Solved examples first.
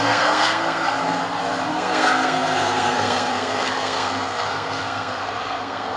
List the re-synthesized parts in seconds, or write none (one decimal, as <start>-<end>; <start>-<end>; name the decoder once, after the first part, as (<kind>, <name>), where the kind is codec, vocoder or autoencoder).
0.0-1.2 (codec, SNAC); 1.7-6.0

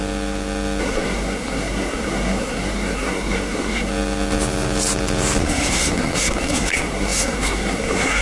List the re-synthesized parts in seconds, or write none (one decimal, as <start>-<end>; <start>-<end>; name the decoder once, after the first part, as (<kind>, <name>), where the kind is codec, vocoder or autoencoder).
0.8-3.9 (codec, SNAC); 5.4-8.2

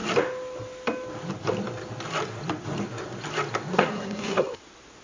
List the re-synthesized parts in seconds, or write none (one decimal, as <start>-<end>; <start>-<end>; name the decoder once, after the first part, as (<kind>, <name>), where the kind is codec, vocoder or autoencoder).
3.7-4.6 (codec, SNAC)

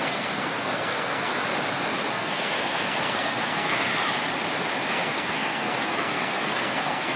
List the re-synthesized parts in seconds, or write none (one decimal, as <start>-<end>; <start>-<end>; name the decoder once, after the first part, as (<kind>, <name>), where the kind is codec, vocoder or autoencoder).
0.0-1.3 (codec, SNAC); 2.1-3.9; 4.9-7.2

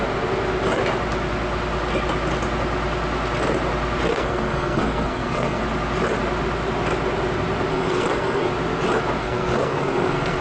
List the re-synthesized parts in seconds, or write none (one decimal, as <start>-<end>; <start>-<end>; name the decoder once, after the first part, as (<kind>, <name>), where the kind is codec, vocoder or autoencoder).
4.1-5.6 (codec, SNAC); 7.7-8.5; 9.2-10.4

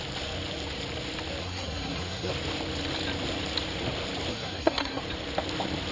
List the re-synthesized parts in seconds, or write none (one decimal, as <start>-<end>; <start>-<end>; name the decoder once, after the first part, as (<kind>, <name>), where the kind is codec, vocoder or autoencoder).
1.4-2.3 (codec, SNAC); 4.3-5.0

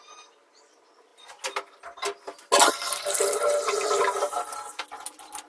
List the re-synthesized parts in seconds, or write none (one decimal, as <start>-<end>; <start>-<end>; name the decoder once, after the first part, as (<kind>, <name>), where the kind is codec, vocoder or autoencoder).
none